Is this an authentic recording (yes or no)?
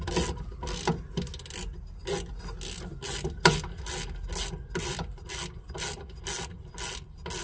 yes